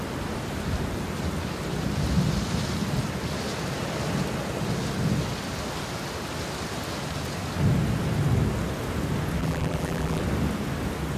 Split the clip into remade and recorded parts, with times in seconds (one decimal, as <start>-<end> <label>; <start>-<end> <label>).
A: 0.0-9.4 recorded; 9.4-10.2 remade; 10.2-11.2 recorded